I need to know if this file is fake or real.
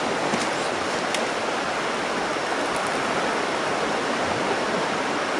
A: real